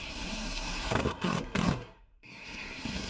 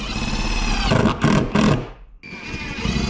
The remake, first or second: first